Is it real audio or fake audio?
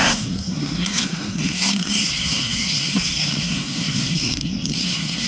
fake